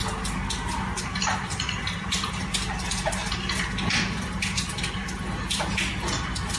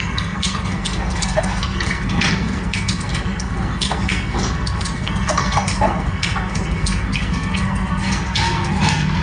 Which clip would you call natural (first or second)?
first